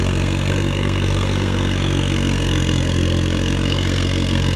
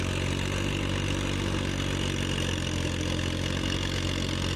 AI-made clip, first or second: first